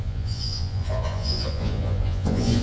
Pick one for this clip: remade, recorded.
remade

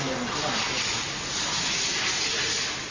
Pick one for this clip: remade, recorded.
recorded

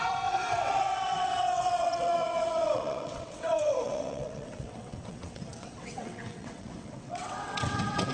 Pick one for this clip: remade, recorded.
remade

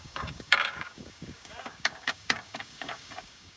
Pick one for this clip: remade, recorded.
remade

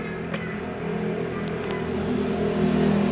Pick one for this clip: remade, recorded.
recorded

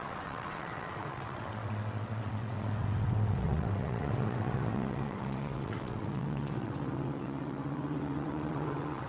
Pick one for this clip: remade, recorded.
remade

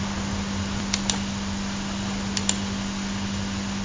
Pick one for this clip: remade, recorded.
recorded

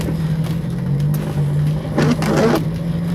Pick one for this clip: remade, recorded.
recorded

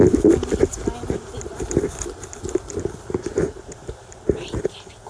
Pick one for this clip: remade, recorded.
recorded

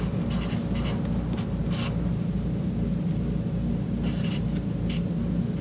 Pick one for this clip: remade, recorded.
recorded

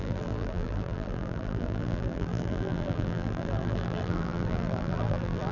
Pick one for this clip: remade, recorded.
remade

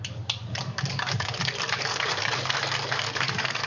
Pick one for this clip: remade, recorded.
remade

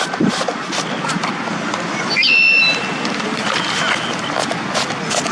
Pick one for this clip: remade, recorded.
recorded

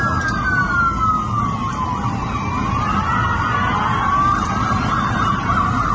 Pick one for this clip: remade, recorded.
recorded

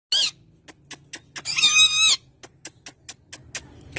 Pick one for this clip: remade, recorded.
recorded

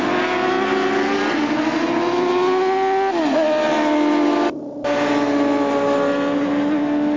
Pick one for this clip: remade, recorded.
recorded